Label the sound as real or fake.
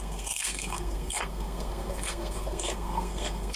fake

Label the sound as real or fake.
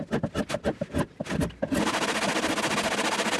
real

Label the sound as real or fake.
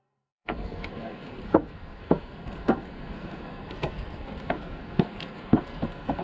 fake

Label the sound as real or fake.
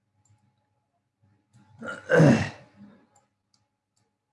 real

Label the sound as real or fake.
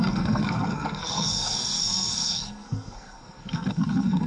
fake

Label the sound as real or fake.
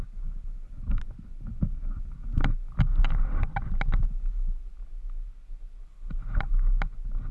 real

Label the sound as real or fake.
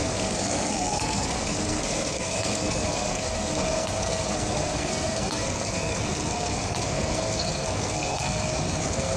fake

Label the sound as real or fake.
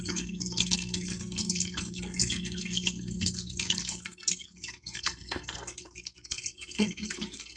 fake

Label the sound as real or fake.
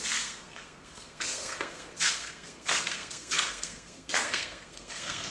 fake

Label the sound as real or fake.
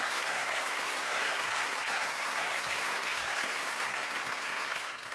fake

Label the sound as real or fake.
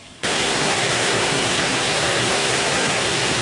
fake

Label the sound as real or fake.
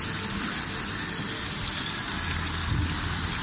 real